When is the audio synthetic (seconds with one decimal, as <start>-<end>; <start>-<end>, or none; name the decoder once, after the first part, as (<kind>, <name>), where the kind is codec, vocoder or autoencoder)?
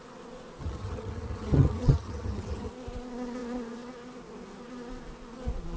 0.6-2.7 (vocoder, HiFi-GAN)